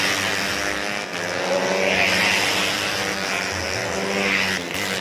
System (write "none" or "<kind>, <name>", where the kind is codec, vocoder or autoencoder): none